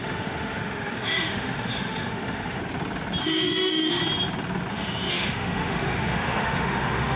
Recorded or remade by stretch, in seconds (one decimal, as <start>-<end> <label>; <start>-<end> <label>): 0.0-2.6 remade; 2.6-3.2 recorded; 3.2-4.0 remade; 4.0-4.7 recorded; 4.7-7.2 remade